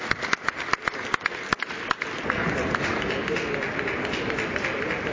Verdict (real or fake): real